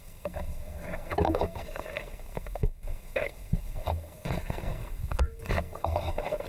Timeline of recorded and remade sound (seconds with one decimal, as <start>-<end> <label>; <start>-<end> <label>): 0.0-6.5 remade